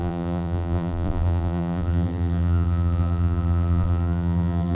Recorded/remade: remade